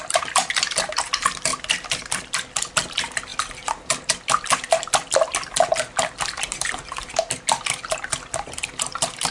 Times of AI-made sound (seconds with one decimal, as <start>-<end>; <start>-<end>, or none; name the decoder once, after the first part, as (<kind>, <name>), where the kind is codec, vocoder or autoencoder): none